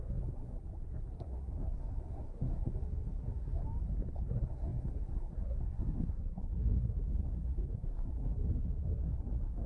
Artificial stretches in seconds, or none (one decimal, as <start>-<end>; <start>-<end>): 0.0-0.6; 1.2-3.6; 4.3-9.7

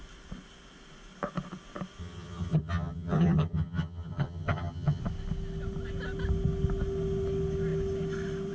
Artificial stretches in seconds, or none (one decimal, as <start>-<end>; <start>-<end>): 2.0-5.0

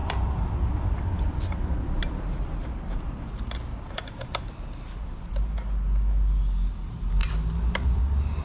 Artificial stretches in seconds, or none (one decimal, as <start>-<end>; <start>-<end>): 3.7-4.5; 7.2-8.0

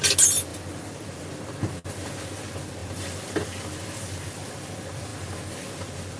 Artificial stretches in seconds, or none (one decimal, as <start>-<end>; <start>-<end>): none